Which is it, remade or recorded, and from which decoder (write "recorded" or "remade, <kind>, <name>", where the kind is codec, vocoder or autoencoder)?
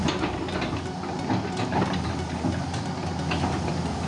recorded